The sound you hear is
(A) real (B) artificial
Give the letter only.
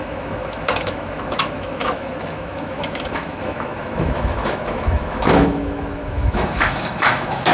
B